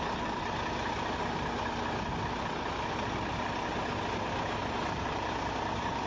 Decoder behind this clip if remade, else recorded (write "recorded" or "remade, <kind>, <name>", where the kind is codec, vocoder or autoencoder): recorded